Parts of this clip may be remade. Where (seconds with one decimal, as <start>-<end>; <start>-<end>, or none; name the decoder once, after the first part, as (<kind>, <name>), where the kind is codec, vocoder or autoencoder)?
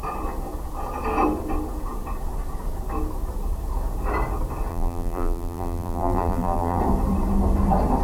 4.7-6.8 (vocoder, BigVGAN v2)